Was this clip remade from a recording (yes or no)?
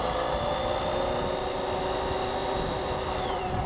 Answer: no